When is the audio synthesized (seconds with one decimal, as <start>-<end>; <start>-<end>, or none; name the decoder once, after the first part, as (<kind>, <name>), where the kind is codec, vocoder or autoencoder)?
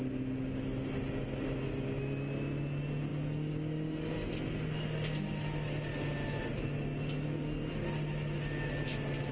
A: none